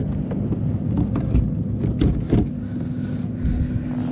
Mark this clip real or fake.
real